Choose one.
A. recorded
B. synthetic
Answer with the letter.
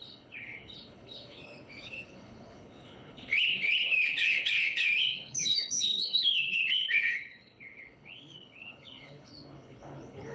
B